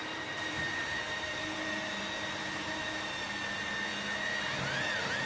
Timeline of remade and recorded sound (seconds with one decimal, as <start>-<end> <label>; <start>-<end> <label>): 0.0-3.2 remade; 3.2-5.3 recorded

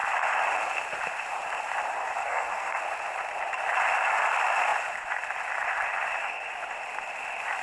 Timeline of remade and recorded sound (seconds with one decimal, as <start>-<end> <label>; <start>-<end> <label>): 0.0-2.2 recorded; 2.2-2.8 remade; 2.8-7.6 recorded

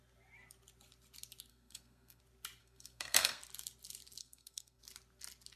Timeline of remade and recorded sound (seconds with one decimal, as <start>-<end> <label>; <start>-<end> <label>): 0.0-1.5 recorded; 1.5-2.2 remade; 2.2-2.6 recorded; 2.6-3.4 remade; 3.4-4.2 recorded; 4.2-4.8 remade; 4.8-5.6 recorded

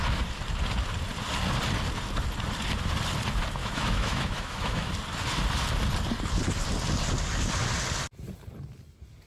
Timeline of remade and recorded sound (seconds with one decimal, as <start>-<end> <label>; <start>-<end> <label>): 0.0-3.6 recorded; 3.6-4.9 remade; 4.9-9.3 recorded

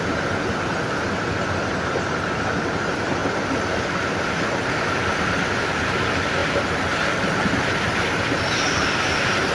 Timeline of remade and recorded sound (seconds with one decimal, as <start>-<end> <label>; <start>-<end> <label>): 0.0-3.2 recorded; 3.2-4.8 remade; 4.8-9.5 recorded